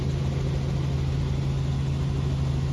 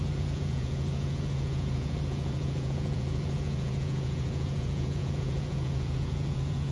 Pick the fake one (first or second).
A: second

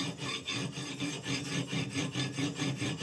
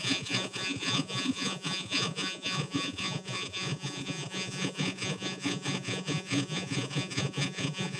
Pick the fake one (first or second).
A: second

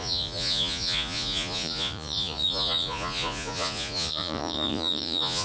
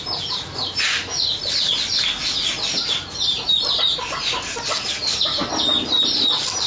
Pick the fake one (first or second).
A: first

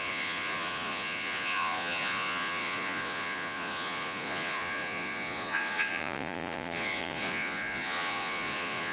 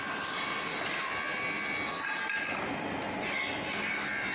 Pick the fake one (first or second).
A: first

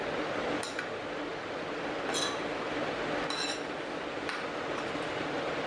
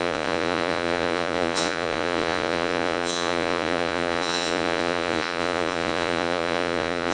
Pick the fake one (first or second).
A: second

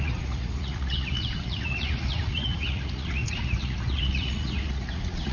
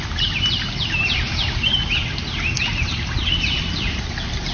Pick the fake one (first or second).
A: first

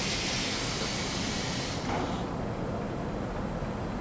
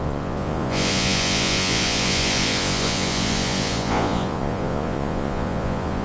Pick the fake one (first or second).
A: second